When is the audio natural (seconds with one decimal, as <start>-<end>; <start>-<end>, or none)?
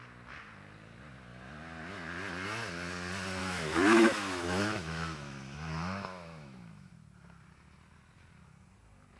0.0-3.4; 6.9-9.2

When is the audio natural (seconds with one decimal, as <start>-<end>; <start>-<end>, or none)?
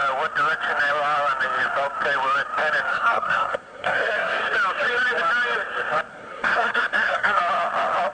0.0-2.9; 4.4-6.1; 7.4-8.1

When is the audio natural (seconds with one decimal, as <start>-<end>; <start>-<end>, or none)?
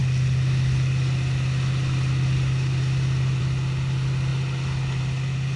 0.0-5.6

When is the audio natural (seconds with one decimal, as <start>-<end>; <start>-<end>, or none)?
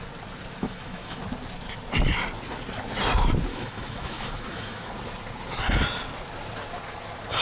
0.0-0.6; 1.2-3.5; 4.9-7.4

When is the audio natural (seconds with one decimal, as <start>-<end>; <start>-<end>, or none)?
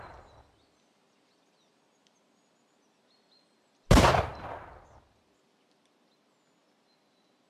0.0-7.5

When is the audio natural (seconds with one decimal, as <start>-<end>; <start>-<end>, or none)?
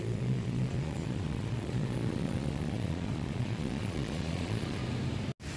4.8-5.6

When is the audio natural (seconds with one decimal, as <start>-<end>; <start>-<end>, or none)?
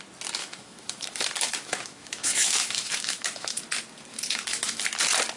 0.0-0.4; 3.6-4.1; 4.8-5.4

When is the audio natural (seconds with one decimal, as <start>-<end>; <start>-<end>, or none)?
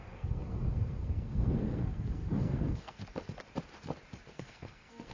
3.0-4.3